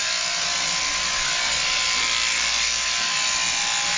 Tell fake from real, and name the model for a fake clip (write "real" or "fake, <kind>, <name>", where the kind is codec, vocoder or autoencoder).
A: real